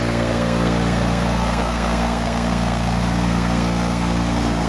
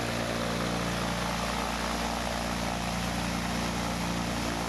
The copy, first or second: first